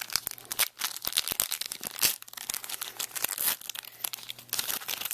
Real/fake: real